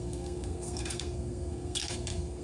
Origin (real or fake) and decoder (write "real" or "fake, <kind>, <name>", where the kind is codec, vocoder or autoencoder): fake, codec, SNAC